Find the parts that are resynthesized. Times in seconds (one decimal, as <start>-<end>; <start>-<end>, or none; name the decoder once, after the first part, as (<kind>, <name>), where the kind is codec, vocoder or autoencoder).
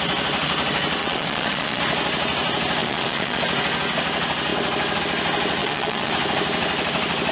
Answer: 1.0-1.8 (vocoder, Vocos); 2.8-3.4; 5.6-6.1